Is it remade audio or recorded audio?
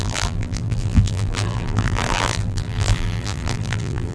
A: remade